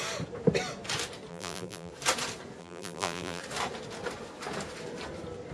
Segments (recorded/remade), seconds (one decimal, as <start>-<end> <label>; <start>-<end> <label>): 0.0-1.3 recorded; 1.3-1.9 remade; 1.9-2.6 recorded; 2.6-3.4 remade; 3.4-5.5 recorded